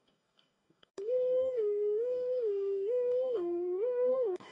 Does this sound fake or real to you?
fake